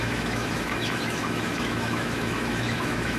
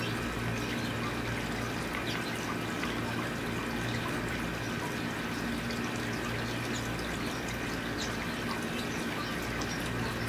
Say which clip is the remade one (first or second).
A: first